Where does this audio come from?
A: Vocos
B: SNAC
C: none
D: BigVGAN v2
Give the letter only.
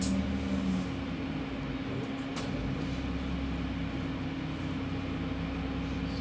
C